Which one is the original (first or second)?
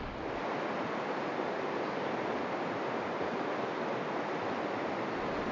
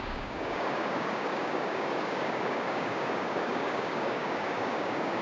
first